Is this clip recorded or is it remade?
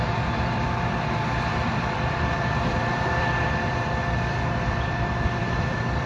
remade